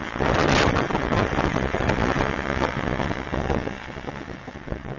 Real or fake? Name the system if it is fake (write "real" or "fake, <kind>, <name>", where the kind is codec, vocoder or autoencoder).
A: fake, vocoder, WaveNeXt